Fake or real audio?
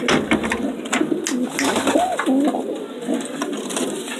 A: real